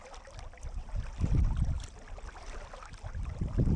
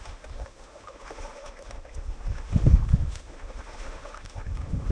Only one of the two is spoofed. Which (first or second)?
second